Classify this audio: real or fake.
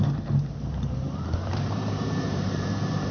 fake